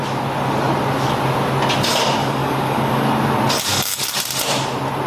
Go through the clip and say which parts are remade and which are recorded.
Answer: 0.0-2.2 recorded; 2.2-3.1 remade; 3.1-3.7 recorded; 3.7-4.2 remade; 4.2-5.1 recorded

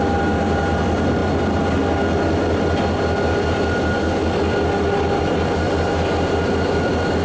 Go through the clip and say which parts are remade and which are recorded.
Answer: 0.0-7.2 recorded